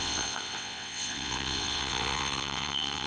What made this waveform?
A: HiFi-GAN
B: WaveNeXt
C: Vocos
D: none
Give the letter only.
B